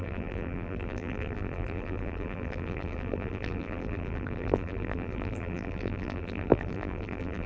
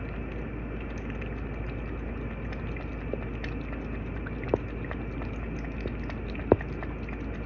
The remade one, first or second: first